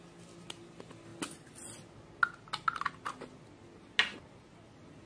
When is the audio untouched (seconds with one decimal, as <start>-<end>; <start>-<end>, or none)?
0.0-5.1